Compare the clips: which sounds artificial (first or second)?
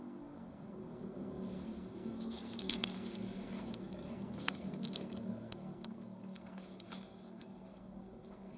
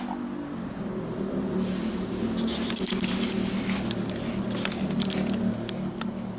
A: first